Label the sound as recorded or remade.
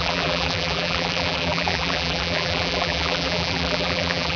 remade